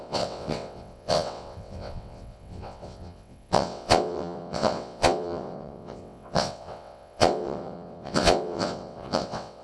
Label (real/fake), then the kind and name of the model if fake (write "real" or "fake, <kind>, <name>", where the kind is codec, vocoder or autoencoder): fake, vocoder, WaveNeXt